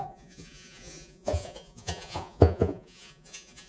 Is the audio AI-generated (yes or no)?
yes